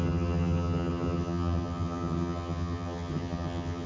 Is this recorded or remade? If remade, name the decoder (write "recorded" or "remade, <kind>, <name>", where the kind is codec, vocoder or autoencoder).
remade, vocoder, HiFi-GAN